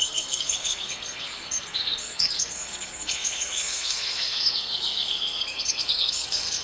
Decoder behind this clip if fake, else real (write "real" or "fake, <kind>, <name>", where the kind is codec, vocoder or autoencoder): fake, codec, SNAC